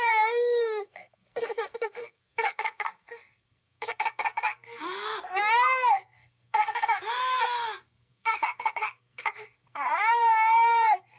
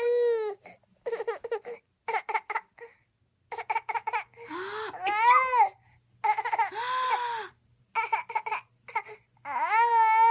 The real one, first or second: second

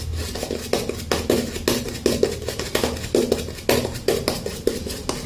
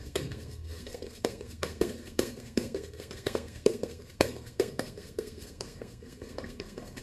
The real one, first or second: first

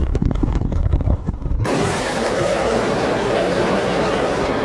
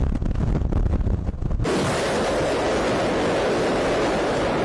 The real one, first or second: second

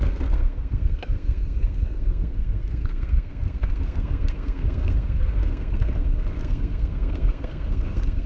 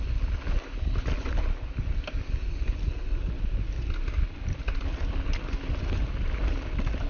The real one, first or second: second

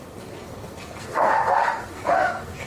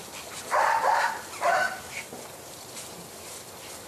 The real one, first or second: second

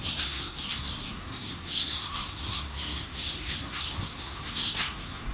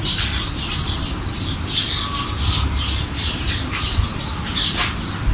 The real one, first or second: second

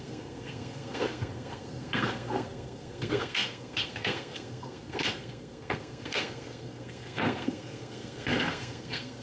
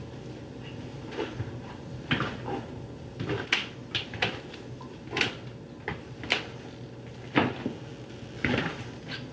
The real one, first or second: second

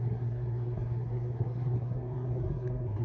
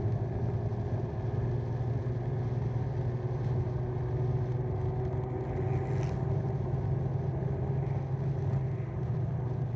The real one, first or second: second